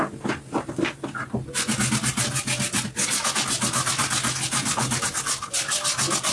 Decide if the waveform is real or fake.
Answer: real